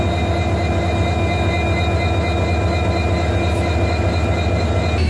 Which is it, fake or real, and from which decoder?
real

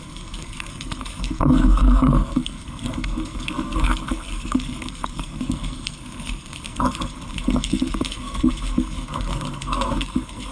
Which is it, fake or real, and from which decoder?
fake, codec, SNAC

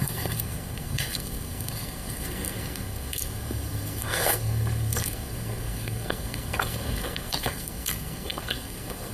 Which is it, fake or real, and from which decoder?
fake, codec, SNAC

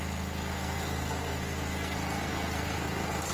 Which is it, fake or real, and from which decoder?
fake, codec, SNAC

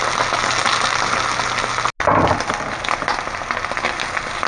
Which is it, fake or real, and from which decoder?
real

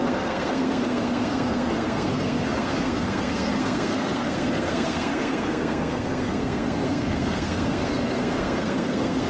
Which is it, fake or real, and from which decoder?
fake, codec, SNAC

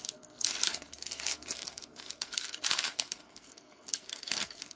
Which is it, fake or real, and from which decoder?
fake, codec, SNAC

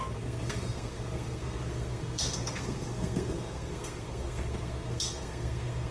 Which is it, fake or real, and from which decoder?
fake, codec, SNAC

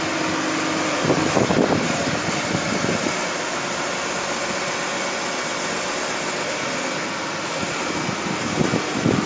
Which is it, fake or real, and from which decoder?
real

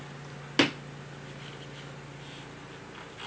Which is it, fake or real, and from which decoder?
real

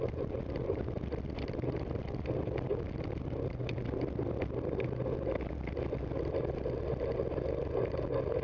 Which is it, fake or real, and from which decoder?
real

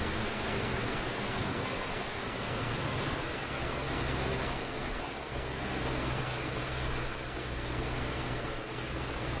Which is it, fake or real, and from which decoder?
fake, codec, SNAC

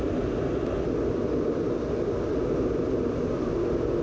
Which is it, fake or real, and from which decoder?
real